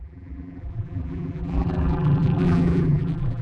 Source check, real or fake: fake